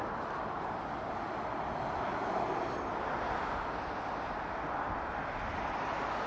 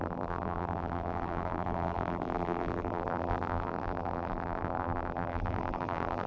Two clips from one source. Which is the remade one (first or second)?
second